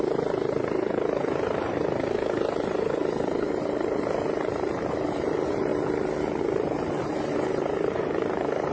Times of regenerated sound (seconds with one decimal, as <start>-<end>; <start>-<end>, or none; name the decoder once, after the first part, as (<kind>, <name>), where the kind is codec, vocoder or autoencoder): 0.0-5.7 (vocoder, BigVGAN v2); 6.4-8.7

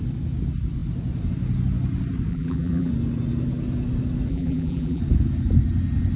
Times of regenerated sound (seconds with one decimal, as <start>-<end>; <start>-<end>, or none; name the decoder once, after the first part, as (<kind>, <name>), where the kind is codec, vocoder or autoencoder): 2.3-2.9 (vocoder, BigVGAN v2); 4.3-5.0

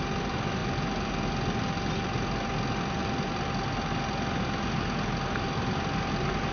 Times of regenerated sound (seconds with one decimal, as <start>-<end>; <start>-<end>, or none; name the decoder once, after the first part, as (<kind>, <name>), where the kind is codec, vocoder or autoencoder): none